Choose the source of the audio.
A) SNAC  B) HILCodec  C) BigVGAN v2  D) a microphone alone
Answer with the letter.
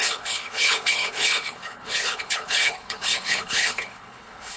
B